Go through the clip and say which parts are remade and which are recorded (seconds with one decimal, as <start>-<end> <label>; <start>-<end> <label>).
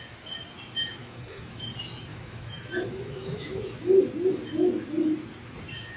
0.0-1.0 recorded; 1.0-1.7 remade; 1.7-2.1 recorded; 2.1-3.6 remade; 3.6-6.0 recorded